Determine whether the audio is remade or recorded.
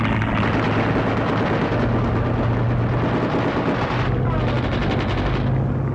recorded